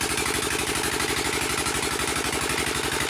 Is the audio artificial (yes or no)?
no